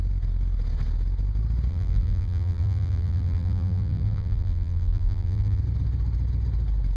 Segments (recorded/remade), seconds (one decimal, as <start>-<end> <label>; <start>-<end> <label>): 0.0-1.7 recorded; 1.7-5.6 remade; 5.6-7.0 recorded